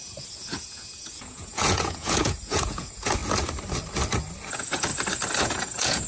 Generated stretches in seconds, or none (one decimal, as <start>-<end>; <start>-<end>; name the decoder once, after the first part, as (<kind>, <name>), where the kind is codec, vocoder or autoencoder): 0.0-3.2 (vocoder, Vocos); 4.5-4.9; 5.4-6.1